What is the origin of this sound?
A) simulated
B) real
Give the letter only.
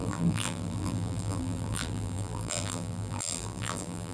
A